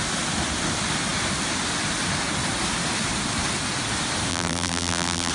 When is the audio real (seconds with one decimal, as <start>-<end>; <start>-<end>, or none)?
0.0-4.3